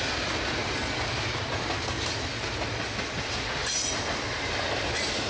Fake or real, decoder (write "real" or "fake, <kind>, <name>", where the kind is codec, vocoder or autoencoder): real